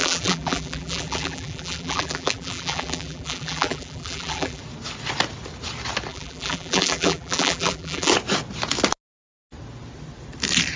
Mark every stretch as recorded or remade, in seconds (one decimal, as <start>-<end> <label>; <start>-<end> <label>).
0.0-4.6 remade; 4.6-6.1 recorded; 6.1-8.1 remade; 8.1-10.8 recorded